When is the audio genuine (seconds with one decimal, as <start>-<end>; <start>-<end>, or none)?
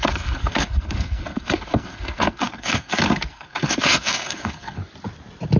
4.8-5.6